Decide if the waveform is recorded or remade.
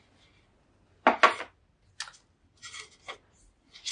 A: recorded